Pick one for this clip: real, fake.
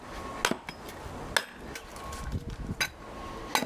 real